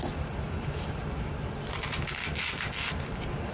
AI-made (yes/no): yes